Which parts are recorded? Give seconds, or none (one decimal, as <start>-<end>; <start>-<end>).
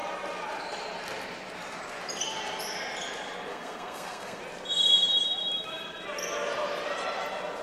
0.0-3.5; 4.4-7.6